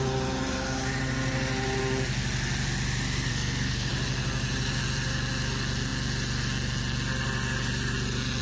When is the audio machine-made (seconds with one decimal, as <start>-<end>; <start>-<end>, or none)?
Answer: 3.3-3.9